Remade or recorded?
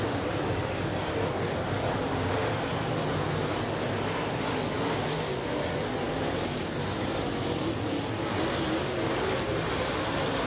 recorded